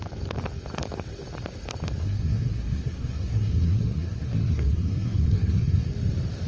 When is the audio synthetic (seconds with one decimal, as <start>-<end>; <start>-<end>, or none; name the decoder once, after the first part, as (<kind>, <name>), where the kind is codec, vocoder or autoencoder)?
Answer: 2.0-5.9 (codec, SNAC)